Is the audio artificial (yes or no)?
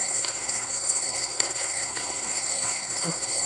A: yes